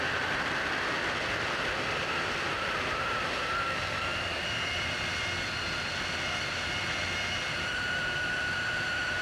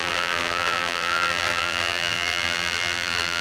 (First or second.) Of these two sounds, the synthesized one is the second